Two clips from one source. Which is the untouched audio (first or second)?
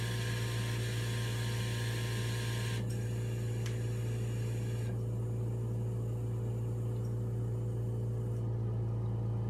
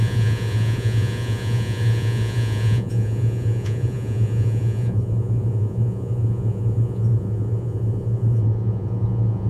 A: first